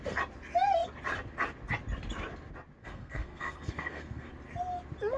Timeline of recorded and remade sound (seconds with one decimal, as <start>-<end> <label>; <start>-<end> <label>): 0.0-2.8 recorded; 2.8-4.3 remade; 4.3-5.2 recorded